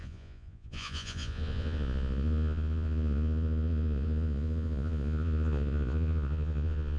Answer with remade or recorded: remade